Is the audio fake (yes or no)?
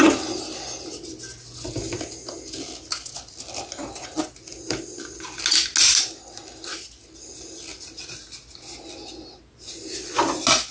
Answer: no